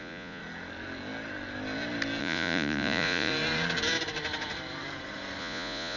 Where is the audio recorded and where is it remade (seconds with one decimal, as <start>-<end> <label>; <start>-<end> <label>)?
0.0-0.4 remade; 0.4-2.2 recorded; 2.2-3.3 remade; 3.3-5.4 recorded; 5.4-6.0 remade